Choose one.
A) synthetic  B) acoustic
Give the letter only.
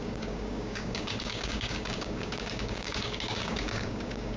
A